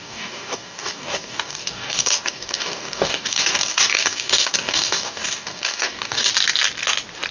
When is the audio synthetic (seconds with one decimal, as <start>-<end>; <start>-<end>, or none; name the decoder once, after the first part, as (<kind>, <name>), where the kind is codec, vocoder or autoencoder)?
0.0-6.3 (codec, DAC)

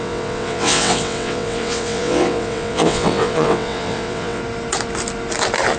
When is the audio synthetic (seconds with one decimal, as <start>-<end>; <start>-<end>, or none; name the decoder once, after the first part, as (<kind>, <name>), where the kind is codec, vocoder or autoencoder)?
0.0-4.4 (vocoder, WaveNeXt)

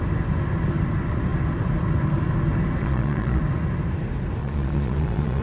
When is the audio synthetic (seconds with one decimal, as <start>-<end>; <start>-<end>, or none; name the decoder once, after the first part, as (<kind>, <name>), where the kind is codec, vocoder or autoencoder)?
2.8-3.4 (vocoder, Vocos); 4.4-5.4

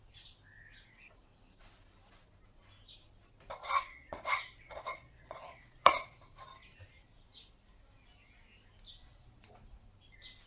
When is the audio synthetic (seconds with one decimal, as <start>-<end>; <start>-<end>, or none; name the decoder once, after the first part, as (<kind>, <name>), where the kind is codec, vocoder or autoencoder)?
3.6-6.2 (vocoder, Vocos); 9.0-9.8

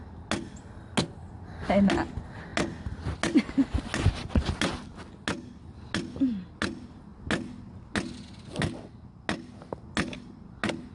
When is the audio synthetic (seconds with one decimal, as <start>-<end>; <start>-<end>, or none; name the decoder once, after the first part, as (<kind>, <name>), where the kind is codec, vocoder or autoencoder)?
none

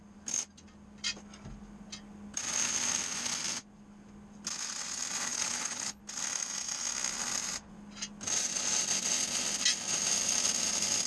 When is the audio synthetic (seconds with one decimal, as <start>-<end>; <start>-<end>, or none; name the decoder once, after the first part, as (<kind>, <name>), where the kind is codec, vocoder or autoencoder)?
5.3-6.0 (codec, HILCodec)

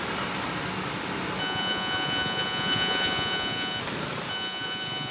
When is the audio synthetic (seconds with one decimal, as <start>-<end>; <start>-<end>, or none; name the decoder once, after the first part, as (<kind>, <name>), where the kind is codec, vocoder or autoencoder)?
1.4-3.8 (vocoder, Vocos); 4.3-5.1

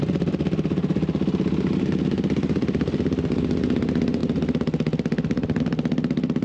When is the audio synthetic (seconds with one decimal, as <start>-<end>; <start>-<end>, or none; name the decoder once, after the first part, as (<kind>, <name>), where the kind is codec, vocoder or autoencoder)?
none